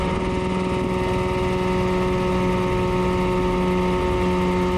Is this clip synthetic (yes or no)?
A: no